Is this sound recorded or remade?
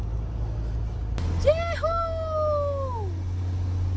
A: recorded